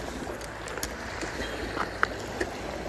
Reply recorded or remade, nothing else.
recorded